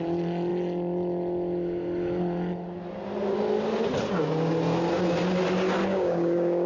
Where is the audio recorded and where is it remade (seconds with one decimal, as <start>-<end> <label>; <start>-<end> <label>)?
0.0-5.9 recorded; 5.9-6.7 remade

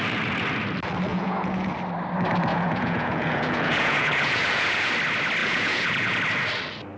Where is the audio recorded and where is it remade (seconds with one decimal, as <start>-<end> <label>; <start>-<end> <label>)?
0.0-1.1 recorded; 1.1-1.7 remade; 1.7-2.5 recorded; 2.5-4.9 remade; 4.9-5.4 recorded; 5.4-6.2 remade; 6.2-7.0 recorded

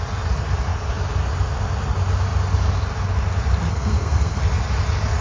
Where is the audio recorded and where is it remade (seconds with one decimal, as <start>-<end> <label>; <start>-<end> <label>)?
0.0-3.7 recorded; 3.7-4.4 remade; 4.4-5.2 recorded

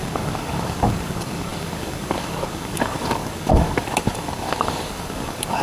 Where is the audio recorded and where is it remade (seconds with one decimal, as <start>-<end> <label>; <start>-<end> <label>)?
0.0-5.6 remade